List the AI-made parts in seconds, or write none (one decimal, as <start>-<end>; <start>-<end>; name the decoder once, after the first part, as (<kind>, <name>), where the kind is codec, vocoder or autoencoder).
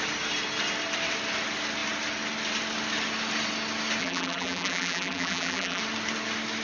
4.0-5.8 (vocoder, BigVGAN v2)